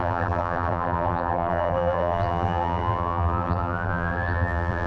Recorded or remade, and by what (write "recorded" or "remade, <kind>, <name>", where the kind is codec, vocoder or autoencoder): remade, vocoder, BigVGAN v2